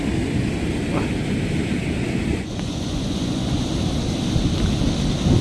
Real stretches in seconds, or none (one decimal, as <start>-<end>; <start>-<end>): 0.0-2.3; 3.5-5.4